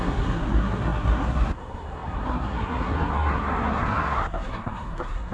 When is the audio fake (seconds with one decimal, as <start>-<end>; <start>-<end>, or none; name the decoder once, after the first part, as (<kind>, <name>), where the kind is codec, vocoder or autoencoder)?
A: 0.0-5.3 (codec, SNAC)